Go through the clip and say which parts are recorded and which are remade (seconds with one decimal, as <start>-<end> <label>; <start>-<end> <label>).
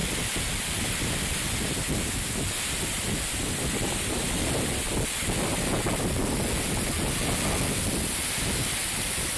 0.0-9.4 recorded